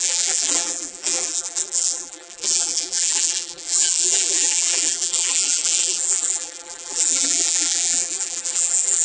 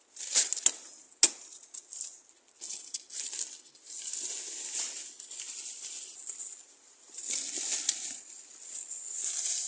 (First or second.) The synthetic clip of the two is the first